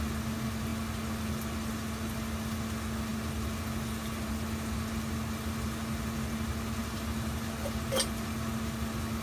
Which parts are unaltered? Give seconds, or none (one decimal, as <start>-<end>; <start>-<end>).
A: 0.0-9.2